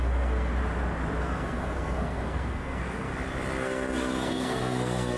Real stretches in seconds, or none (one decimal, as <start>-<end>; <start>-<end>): 0.5-1.2; 3.1-3.6